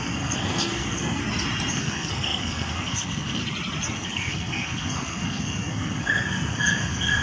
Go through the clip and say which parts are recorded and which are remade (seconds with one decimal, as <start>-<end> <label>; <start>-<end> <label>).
0.0-1.2 remade; 1.2-1.7 recorded; 1.7-3.4 remade; 3.4-3.9 recorded; 3.9-7.2 remade